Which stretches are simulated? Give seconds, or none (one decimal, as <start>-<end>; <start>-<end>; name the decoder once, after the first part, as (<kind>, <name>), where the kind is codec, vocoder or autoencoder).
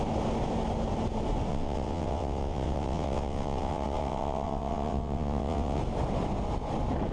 1.5-5.8 (vocoder, WaveNeXt)